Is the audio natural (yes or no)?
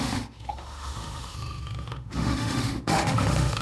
no